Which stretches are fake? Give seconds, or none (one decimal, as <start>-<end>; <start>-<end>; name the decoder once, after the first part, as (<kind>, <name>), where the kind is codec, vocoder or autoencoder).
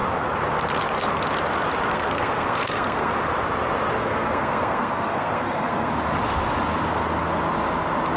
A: 1.9-3.1 (codec, SNAC); 4.0-5.9